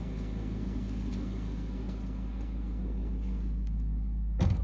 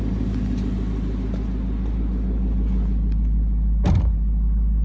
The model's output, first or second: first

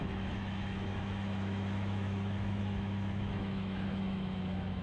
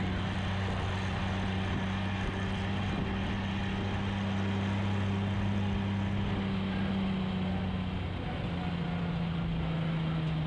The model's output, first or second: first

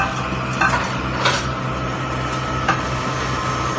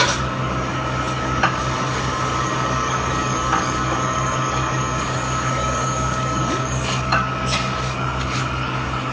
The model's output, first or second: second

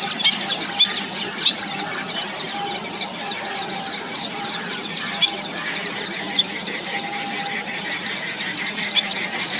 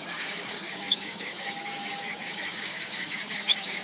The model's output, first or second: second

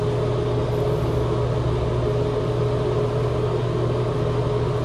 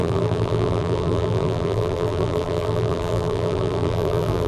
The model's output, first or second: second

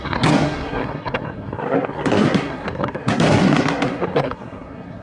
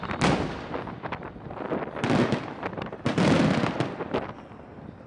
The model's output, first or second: first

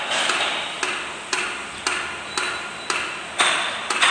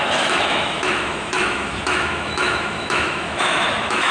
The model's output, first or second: second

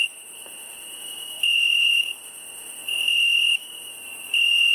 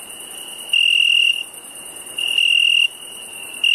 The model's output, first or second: first